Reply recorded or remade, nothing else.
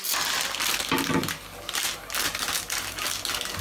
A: recorded